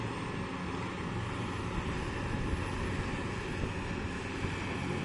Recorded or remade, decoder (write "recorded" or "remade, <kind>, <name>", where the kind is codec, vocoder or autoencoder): recorded